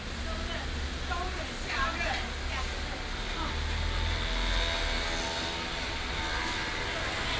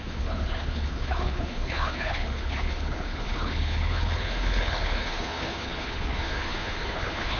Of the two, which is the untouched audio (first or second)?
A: first